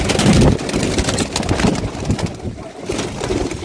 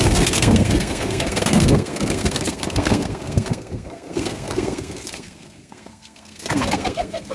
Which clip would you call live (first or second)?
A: first